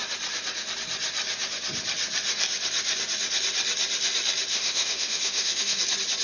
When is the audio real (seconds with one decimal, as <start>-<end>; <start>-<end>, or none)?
0.0-4.5; 5.8-6.2